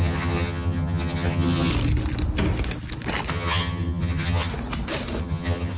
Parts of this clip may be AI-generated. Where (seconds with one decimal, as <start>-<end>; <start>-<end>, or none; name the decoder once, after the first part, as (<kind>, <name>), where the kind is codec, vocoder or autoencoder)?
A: 0.0-1.7 (vocoder, HiFi-GAN); 3.3-4.5; 5.2-5.8